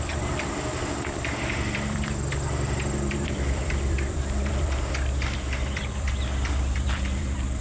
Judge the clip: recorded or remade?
remade